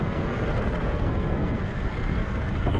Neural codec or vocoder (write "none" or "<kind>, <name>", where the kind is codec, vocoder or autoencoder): codec, SNAC